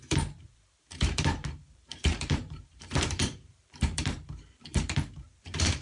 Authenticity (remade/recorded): remade